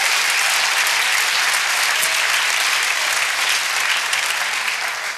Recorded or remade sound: recorded